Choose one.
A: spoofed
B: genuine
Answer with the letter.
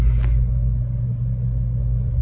B